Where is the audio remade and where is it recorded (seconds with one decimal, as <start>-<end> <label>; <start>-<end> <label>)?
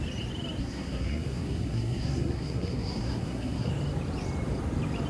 0.0-0.6 recorded; 0.6-3.7 remade; 3.7-5.1 recorded